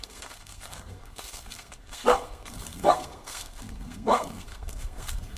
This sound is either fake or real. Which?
fake